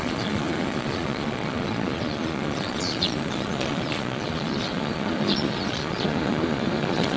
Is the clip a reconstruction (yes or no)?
yes